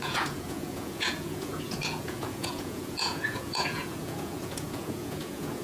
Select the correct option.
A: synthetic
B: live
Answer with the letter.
A